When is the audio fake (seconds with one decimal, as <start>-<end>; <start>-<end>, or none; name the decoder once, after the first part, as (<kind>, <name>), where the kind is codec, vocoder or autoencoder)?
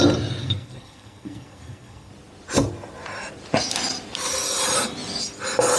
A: 0.4-2.1 (codec, SNAC)